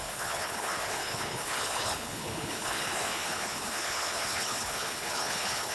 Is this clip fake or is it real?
fake